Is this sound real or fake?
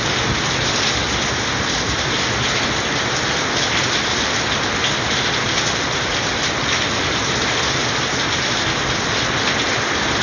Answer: real